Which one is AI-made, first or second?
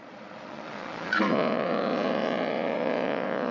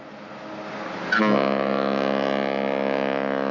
first